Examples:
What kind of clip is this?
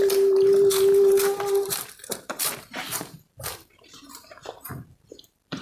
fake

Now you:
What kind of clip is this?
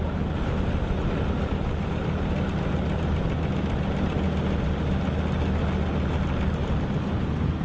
real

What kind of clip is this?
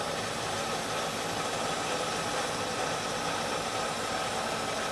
real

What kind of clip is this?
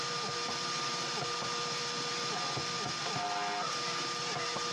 real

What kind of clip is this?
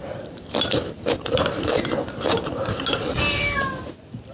real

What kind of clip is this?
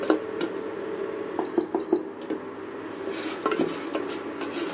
real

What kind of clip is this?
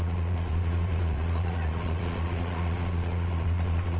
fake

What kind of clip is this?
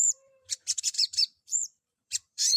fake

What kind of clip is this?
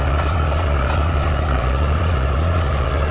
fake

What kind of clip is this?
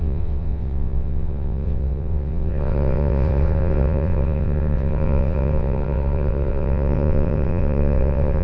fake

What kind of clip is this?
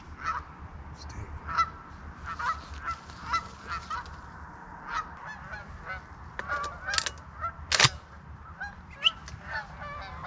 real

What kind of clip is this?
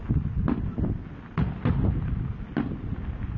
real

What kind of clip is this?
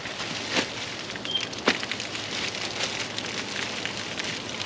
real